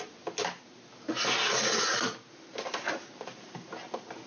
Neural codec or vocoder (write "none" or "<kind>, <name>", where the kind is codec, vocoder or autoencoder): none